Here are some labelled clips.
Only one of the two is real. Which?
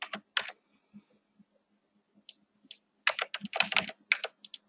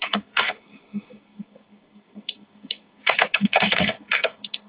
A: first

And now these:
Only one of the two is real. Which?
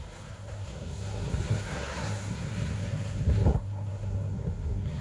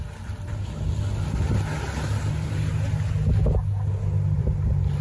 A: second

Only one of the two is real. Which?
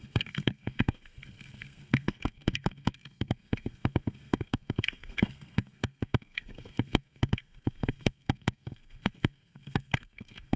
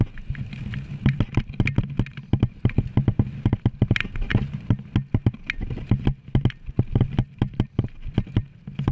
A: second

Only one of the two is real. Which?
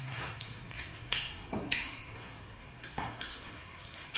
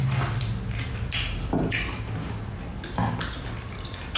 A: second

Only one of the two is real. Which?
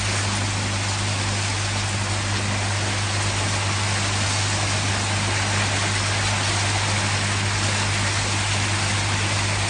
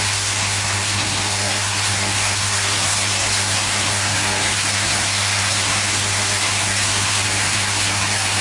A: first